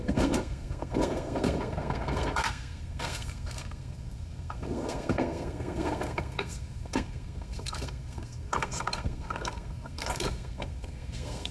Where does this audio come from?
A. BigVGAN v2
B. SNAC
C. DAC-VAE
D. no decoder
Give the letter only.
B